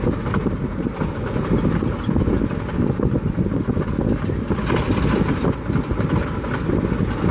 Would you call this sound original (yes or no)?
yes